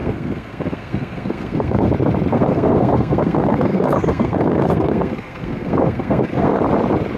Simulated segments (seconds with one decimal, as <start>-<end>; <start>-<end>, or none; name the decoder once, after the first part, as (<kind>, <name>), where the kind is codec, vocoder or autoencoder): 0.0-1.9 (codec, SNAC); 2.3-6.6